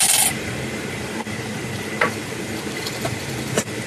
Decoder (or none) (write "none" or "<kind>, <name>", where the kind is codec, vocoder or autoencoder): vocoder, BigVGAN v2